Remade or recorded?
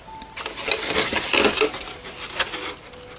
recorded